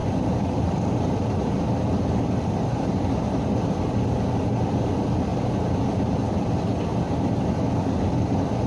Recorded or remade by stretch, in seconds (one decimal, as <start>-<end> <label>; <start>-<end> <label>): 0.0-8.7 recorded